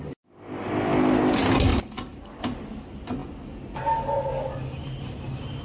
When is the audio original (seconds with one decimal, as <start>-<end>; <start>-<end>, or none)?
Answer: 0.0-5.6